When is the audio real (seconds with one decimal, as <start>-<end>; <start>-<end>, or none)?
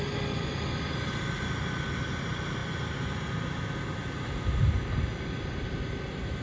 0.0-6.4